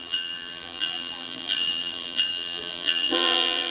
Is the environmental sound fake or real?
fake